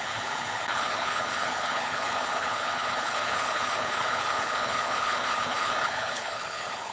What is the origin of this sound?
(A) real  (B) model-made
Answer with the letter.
B